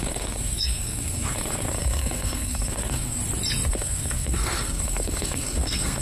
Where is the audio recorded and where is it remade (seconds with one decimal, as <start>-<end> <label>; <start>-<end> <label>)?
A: 0.0-3.2 remade; 3.2-3.7 recorded; 3.7-6.0 remade